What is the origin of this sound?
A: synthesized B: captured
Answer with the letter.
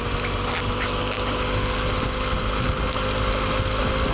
B